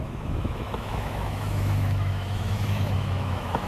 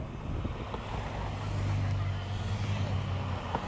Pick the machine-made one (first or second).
first